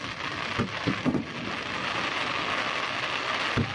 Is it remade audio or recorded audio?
recorded